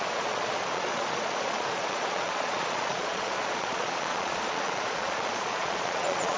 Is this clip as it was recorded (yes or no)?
no